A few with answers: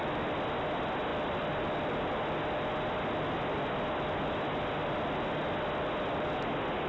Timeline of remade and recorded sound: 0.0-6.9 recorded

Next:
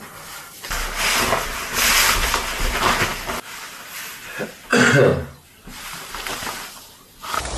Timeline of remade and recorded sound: 0.0-5.1 recorded; 5.1-6.1 remade; 6.1-7.6 recorded

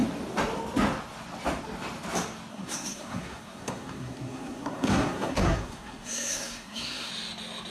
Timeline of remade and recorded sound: 0.0-2.5 recorded; 2.5-7.1 remade; 7.1-7.7 recorded

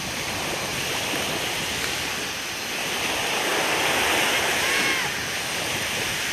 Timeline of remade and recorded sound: 0.0-6.3 recorded

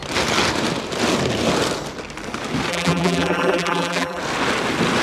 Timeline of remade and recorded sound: 0.0-2.7 recorded; 2.7-4.2 remade; 4.2-5.0 recorded